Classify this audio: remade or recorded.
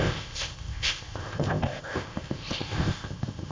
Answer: remade